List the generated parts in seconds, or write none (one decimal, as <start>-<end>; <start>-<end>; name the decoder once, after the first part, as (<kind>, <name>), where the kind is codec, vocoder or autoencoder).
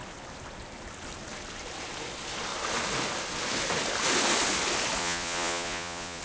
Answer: 5.0-6.2 (vocoder, Vocos)